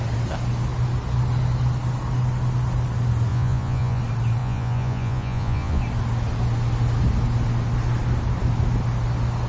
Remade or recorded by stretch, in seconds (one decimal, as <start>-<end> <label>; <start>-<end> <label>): 0.0-3.3 recorded; 3.3-4.0 remade; 4.0-4.4 recorded; 4.4-5.8 remade; 5.8-9.5 recorded